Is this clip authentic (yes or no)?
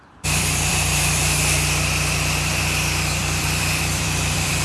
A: no